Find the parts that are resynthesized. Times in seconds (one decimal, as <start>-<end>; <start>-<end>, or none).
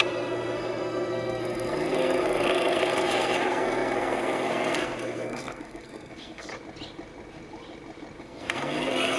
0.0-6.5; 8.2-9.2